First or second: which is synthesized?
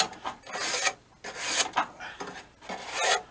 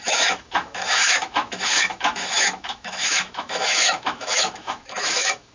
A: second